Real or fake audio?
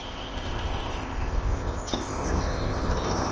fake